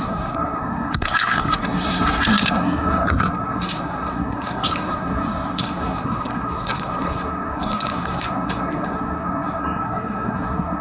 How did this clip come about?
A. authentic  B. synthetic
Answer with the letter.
B